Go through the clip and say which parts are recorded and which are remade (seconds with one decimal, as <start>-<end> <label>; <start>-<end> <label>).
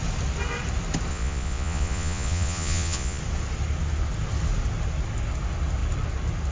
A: 0.0-1.1 recorded; 1.1-3.2 remade; 3.2-6.5 recorded